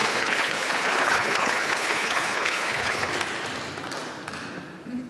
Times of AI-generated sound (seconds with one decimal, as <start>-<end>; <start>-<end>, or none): 0.0-3.1